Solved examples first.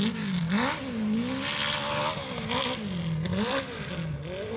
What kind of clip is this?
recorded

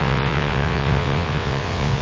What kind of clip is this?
remade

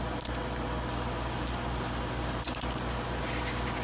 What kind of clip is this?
recorded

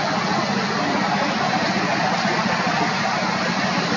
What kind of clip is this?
recorded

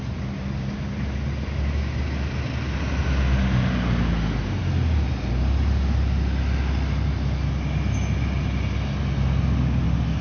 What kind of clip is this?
recorded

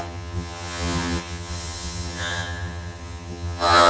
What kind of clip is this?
remade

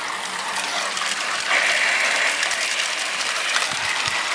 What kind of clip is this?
recorded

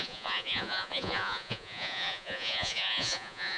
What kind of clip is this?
remade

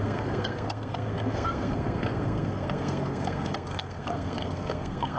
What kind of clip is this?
remade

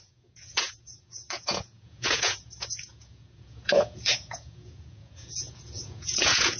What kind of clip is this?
remade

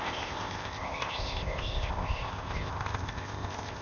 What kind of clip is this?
remade